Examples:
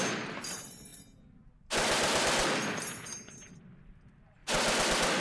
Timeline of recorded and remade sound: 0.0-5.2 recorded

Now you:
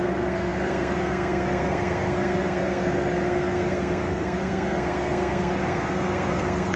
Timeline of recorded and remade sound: 0.0-6.8 remade

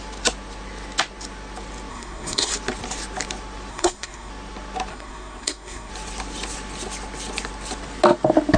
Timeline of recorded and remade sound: 0.0-1.9 recorded; 1.9-2.5 remade; 2.5-3.7 recorded; 3.7-4.3 remade; 4.3-4.9 recorded; 4.9-5.9 remade; 5.9-8.6 recorded

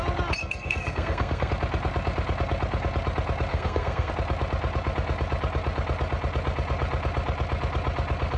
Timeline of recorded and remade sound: 0.0-0.4 recorded; 0.4-1.5 remade; 1.5-3.5 recorded; 3.5-4.1 remade; 4.1-8.4 recorded

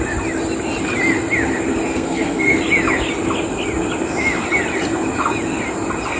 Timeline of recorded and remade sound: 0.0-1.9 recorded; 1.9-2.6 remade; 2.6-6.2 recorded